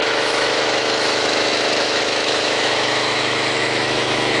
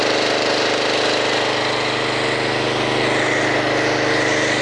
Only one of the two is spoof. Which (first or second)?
first